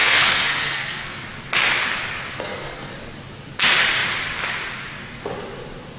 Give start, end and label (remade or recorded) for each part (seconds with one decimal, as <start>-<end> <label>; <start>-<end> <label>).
0.0-1.2 remade; 1.2-2.3 recorded; 2.3-2.9 remade; 2.9-6.0 recorded